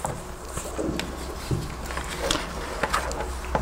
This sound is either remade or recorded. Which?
recorded